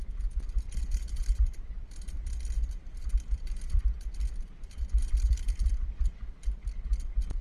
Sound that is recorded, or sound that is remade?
remade